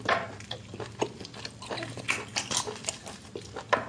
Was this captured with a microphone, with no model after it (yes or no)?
yes